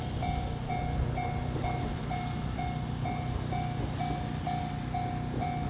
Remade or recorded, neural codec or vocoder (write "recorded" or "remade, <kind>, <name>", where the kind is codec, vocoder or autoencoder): recorded